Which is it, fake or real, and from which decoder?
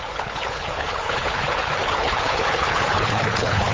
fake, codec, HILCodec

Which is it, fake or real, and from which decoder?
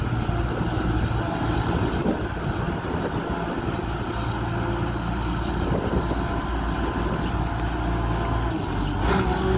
real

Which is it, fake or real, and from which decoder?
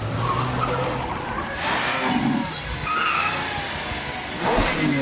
real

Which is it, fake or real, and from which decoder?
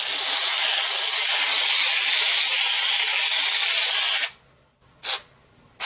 real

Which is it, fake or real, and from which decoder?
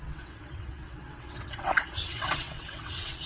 fake, vocoder, WaveNeXt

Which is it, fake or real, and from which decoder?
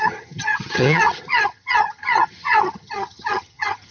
fake, vocoder, HiFi-GAN